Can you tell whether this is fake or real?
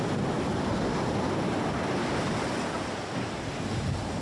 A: real